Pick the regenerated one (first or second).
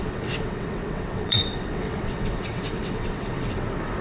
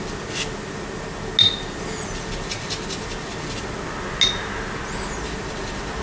first